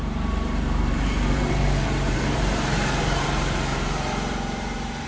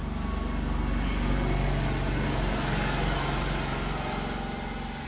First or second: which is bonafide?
second